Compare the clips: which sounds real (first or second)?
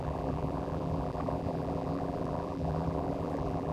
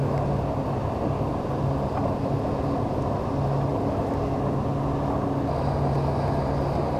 second